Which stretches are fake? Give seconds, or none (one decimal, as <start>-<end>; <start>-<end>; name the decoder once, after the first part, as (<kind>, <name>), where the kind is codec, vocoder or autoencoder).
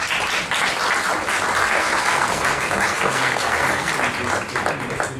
1.6-3.9 (codec, SNAC)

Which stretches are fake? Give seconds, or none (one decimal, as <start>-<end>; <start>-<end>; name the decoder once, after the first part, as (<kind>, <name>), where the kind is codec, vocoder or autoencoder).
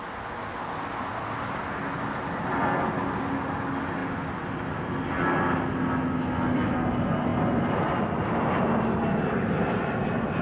none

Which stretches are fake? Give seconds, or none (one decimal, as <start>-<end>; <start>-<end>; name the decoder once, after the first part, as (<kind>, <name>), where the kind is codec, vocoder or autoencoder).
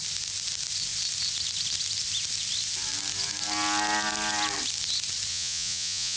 5.3-6.2 (vocoder, Vocos)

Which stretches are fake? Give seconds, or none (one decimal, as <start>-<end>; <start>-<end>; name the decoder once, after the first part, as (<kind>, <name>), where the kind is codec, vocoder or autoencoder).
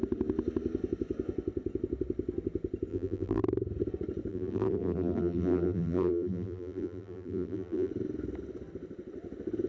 2.9-3.4 (vocoder, BigVGAN v2); 4.3-7.9